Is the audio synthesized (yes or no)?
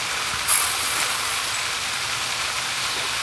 no